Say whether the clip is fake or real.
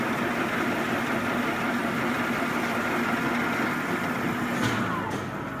real